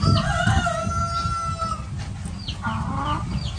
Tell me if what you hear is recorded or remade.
recorded